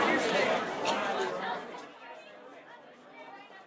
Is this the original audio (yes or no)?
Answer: yes